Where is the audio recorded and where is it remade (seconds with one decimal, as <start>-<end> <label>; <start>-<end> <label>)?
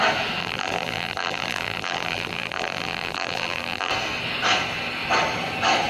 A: 0.0-0.4 recorded; 0.4-3.9 remade; 3.9-5.9 recorded